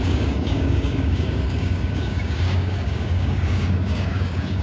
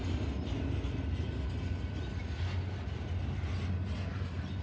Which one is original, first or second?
second